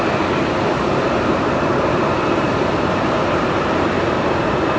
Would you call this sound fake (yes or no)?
yes